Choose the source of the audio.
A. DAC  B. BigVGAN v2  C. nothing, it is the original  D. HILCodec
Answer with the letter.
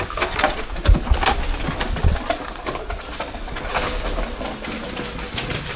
C